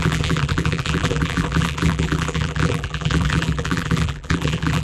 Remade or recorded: remade